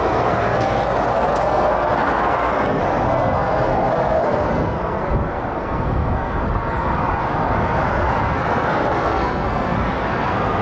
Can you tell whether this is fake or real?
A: fake